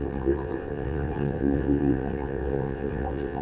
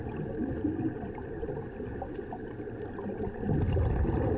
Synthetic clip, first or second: first